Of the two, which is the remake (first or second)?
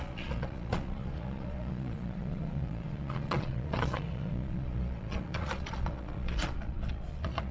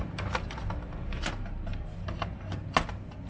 first